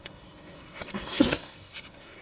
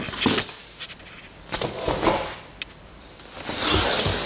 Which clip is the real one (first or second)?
second